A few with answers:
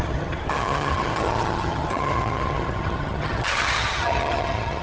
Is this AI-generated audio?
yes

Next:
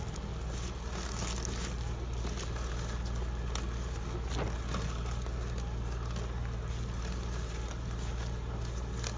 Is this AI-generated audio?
no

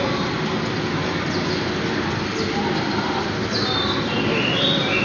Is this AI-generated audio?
no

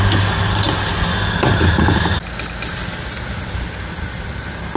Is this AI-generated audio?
no